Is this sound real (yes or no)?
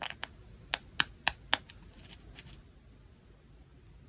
yes